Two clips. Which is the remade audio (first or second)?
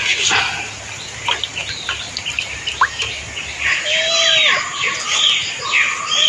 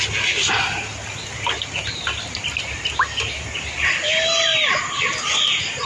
second